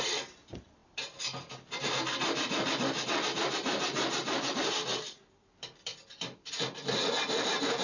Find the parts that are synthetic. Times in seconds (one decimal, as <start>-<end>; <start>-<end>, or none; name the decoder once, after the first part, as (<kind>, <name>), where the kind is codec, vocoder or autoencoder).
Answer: 0.0-5.9 (vocoder, BigVGAN v2); 6.5-7.8

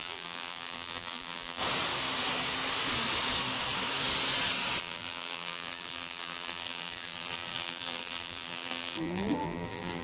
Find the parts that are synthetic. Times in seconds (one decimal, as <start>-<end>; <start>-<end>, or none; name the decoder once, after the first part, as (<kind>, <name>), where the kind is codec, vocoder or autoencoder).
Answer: 0.0-1.6 (vocoder, BigVGAN v2); 4.8-10.0